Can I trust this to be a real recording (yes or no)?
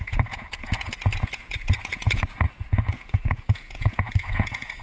no